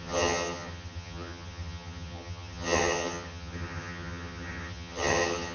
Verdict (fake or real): fake